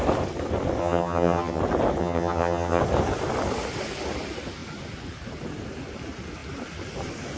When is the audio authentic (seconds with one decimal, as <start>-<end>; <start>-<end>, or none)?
0.0-0.8; 1.6-2.0; 2.8-7.4